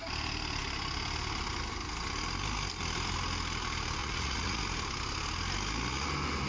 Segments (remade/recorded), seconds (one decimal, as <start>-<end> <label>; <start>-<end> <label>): 0.0-4.0 recorded; 4.0-4.6 remade; 4.6-6.5 recorded